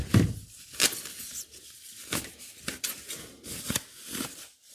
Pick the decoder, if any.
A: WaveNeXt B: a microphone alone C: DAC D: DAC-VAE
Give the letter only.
B